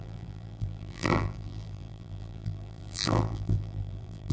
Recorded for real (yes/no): no